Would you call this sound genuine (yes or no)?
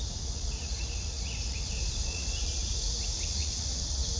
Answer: no